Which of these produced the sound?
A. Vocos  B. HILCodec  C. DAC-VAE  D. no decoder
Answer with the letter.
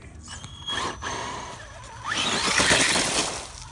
D